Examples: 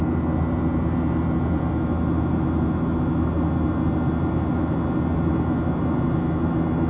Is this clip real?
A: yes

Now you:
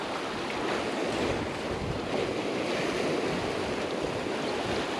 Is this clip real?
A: yes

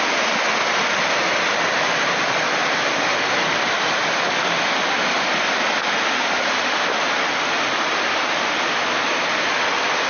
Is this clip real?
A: yes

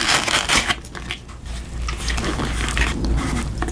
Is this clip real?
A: yes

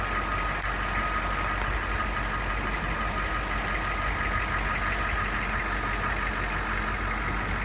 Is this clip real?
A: yes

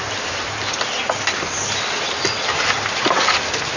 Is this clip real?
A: yes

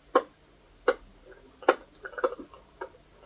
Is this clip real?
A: yes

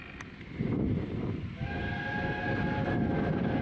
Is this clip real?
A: yes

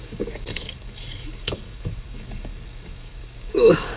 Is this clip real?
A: no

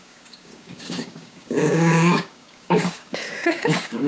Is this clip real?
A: no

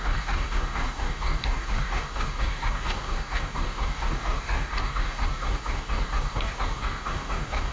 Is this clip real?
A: no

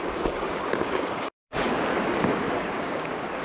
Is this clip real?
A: no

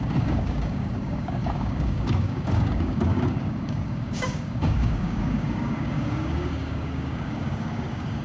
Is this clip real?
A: no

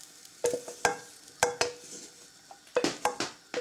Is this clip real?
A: yes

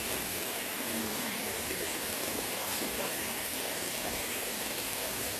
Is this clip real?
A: no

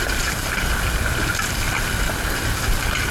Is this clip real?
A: yes